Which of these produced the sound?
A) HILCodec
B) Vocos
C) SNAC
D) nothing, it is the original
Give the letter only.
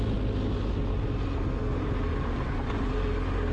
D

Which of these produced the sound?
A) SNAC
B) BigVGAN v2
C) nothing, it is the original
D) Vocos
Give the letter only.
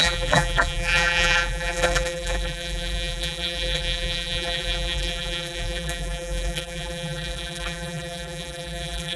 B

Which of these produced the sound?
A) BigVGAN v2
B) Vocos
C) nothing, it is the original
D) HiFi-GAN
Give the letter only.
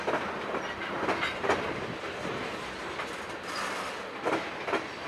C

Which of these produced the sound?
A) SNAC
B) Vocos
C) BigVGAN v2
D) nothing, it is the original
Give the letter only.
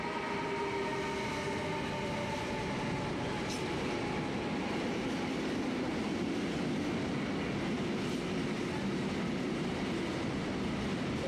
D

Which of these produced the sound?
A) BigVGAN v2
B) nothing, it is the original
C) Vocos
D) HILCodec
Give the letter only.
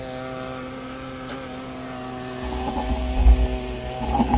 B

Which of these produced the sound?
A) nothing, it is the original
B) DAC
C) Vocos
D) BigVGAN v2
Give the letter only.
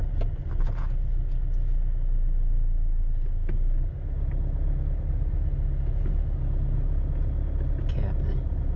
A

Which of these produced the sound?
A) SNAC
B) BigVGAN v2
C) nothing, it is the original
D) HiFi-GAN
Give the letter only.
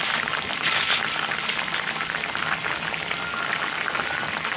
C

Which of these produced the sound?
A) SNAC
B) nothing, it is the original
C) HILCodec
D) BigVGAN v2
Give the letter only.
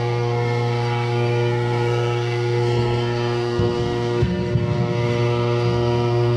A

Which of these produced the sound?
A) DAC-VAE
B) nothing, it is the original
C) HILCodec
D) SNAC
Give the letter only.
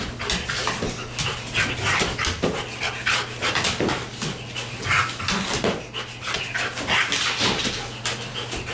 B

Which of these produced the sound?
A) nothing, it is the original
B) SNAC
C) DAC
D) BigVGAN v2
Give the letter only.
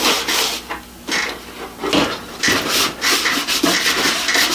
D